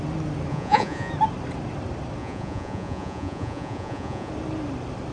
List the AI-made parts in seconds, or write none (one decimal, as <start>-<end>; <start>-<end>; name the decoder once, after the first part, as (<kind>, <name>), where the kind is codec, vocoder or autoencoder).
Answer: 0.5-1.1 (vocoder, Vocos); 2.2-4.3